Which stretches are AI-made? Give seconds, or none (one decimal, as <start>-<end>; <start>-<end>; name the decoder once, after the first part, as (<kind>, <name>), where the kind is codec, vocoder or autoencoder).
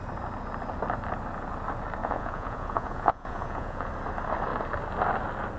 2.0-3.9 (vocoder, Vocos)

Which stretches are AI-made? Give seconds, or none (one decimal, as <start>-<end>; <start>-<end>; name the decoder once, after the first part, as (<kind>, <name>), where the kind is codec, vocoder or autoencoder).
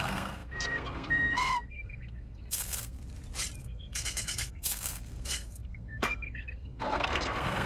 0.0-3.0 (codec, SNAC); 3.6-7.7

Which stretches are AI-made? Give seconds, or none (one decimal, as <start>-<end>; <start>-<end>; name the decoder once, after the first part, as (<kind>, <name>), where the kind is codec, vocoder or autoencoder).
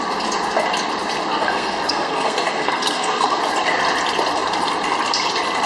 1.4-3.4 (codec, SNAC)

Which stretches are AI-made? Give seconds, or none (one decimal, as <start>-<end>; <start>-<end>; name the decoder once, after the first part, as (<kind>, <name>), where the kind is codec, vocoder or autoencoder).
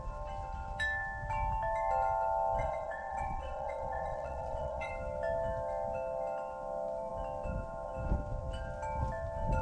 2.6-4.9 (vocoder, WaveNeXt)